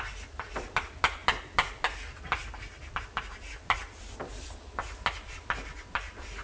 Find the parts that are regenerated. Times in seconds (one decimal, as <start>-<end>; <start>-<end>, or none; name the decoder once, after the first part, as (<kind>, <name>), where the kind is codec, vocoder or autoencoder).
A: none